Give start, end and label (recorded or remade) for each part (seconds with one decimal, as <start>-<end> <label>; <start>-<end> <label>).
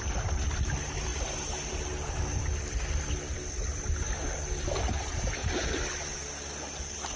0.0-7.2 recorded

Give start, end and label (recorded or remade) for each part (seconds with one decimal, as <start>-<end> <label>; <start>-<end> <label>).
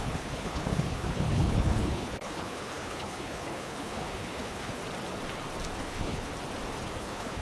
0.0-4.8 remade; 4.8-5.8 recorded; 5.8-6.3 remade; 6.3-7.0 recorded; 7.0-7.4 remade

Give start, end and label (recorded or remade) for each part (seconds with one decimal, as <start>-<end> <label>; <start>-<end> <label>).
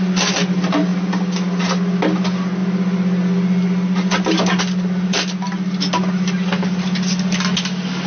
0.0-8.1 recorded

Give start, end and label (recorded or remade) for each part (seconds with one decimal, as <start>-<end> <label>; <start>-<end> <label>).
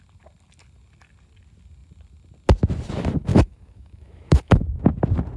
0.0-3.3 recorded; 3.3-4.6 remade; 4.6-5.4 recorded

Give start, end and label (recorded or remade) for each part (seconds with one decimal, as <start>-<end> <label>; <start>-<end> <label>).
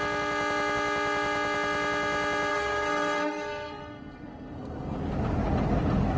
0.0-2.5 recorded; 2.5-5.0 remade; 5.0-6.2 recorded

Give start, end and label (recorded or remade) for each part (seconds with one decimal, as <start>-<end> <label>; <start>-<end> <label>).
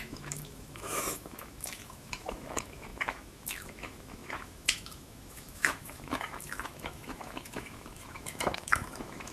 0.0-9.3 remade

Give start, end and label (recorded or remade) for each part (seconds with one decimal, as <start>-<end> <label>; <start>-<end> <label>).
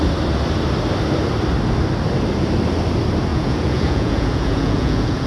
0.0-3.3 recorded; 3.3-5.3 remade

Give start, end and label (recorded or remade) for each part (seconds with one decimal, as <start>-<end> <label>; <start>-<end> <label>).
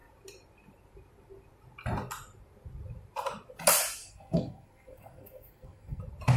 0.0-4.0 recorded; 4.0-6.0 remade; 6.0-6.4 recorded